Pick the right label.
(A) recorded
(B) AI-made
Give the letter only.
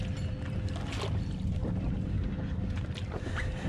A